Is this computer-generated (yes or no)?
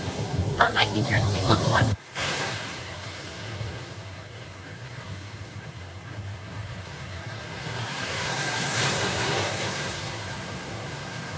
yes